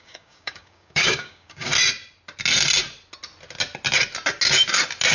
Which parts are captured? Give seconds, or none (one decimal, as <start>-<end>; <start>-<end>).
1.7-5.1

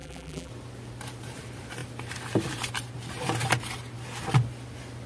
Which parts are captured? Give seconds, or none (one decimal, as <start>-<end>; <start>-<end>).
0.5-5.1

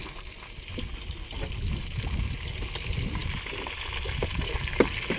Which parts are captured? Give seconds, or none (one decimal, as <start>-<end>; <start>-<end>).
0.0-5.2

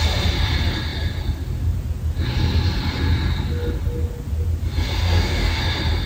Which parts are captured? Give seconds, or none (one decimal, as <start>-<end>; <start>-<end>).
0.0-5.0; 5.6-6.1